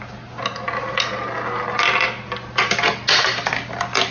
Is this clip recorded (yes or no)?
yes